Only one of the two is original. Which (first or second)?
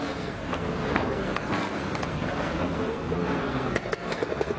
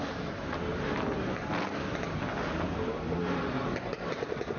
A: second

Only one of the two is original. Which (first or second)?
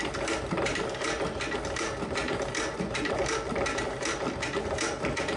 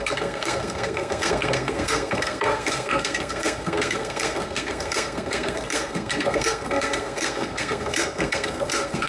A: first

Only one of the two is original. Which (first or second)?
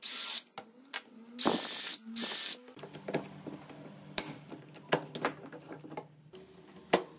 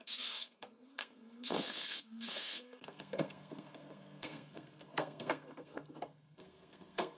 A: first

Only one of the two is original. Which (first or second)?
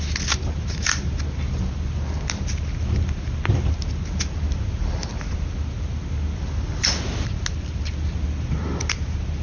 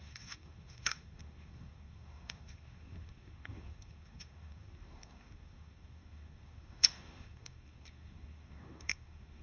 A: first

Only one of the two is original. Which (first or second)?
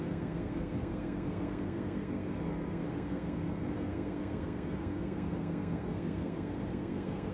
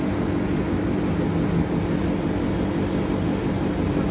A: second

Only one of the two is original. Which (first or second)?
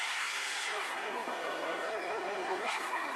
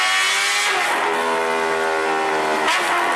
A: second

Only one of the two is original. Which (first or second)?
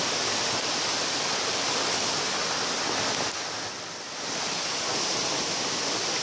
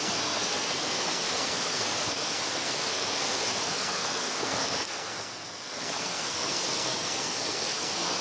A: first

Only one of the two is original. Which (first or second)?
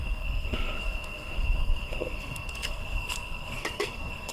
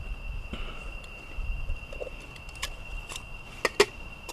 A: second